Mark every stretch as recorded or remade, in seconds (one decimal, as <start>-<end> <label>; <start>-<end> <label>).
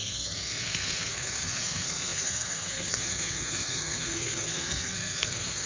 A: 0.0-5.7 remade